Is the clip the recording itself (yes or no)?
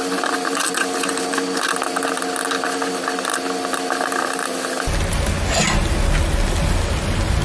yes